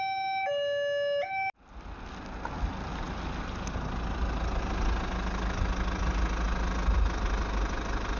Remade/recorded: recorded